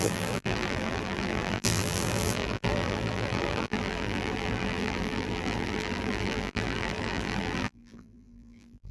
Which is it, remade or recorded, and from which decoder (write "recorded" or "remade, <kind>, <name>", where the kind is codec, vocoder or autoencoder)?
remade, vocoder, BigVGAN v2